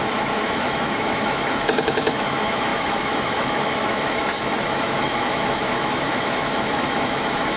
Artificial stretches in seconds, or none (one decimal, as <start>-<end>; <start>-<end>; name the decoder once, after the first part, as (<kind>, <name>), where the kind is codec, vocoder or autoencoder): 0.0-7.6 (autoencoder, DAC-VAE)